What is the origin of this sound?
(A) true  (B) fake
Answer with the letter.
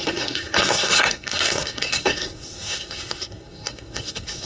B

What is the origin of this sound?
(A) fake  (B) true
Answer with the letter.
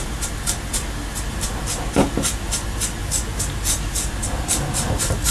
B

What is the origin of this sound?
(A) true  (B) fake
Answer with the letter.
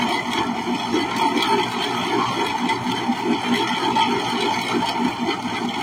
A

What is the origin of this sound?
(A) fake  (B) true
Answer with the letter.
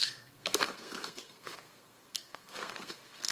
A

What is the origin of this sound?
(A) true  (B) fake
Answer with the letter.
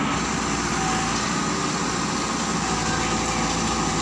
A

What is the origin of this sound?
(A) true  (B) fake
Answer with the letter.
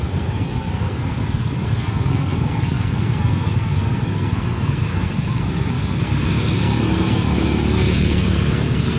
B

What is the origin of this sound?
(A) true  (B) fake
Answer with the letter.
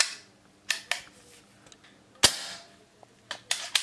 A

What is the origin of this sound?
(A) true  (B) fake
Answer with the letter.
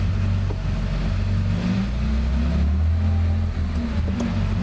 A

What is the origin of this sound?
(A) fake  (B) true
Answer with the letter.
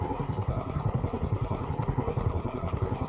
A